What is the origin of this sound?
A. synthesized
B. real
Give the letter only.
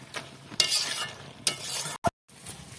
B